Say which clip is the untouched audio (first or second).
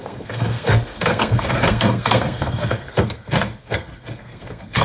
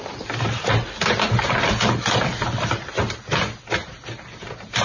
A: second